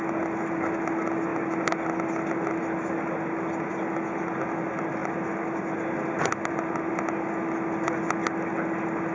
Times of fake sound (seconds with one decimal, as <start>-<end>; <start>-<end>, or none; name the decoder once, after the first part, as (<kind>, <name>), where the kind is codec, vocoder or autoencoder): none